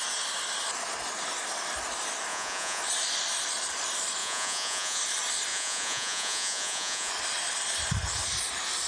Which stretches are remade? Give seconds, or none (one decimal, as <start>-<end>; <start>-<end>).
2.3-2.8; 4.2-5.0; 5.5-7.1